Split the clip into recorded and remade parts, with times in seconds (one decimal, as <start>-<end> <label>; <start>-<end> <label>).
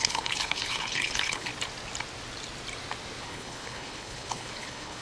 0.0-1.5 remade; 1.5-3.2 recorded; 3.2-5.0 remade